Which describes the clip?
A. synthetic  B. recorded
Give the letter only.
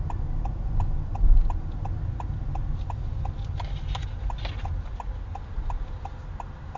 B